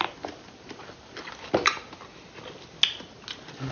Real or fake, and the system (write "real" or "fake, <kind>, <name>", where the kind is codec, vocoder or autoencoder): real